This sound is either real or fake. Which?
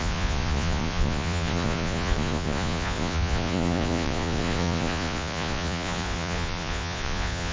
fake